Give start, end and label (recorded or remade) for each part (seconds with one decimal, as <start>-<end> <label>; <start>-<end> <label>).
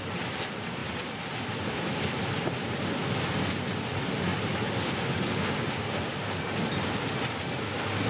0.0-0.8 recorded; 0.8-2.2 remade; 2.2-8.1 recorded